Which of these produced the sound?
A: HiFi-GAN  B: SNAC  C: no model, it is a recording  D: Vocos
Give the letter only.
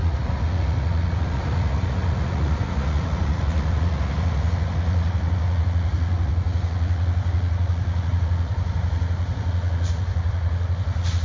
D